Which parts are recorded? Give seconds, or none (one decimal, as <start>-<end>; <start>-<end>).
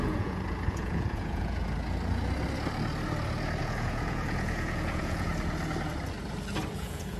1.6-3.6; 5.3-6.7